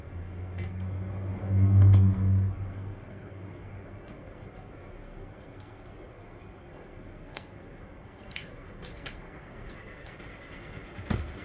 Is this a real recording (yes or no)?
no